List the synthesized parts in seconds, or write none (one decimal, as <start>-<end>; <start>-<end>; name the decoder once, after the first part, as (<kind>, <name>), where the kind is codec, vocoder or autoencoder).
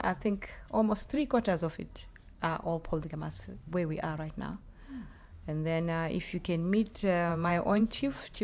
0.0-1.7 (vocoder, Vocos); 2.4-3.1; 7.3-8.4